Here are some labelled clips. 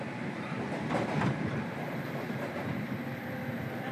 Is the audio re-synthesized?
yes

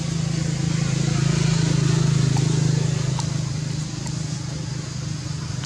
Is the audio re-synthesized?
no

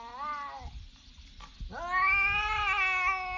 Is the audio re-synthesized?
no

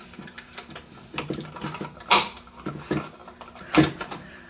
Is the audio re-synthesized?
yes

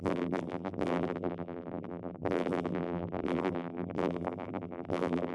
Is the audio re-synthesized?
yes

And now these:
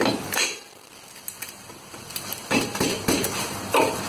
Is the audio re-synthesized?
no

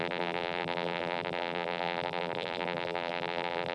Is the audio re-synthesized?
yes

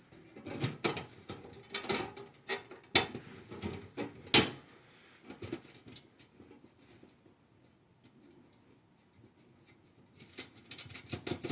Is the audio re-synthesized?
no